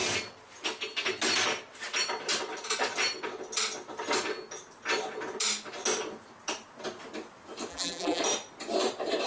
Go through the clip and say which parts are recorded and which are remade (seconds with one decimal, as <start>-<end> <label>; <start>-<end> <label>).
0.0-7.7 recorded; 7.7-8.2 remade; 8.2-9.3 recorded